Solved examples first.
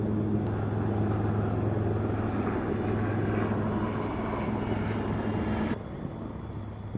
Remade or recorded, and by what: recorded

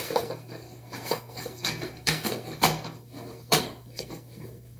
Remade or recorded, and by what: remade, codec, SNAC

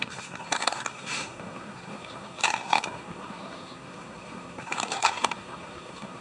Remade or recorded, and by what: remade, codec, SNAC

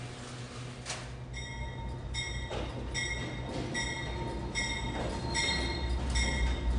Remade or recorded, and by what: recorded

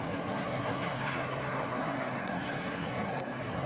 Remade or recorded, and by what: remade, codec, SNAC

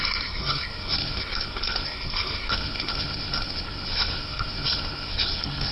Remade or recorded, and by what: remade, codec, SNAC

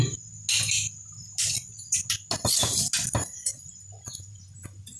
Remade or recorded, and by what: recorded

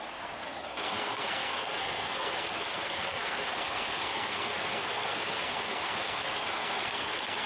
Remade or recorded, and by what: remade, codec, SNAC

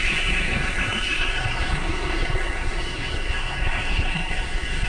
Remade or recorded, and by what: remade, codec, SNAC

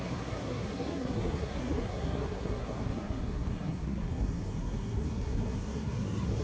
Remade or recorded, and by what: remade, codec, SNAC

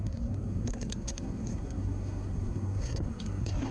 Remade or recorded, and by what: remade, codec, SNAC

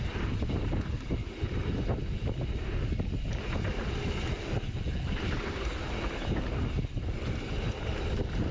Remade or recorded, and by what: recorded